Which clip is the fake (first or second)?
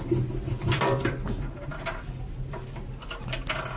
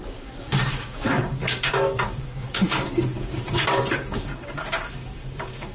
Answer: second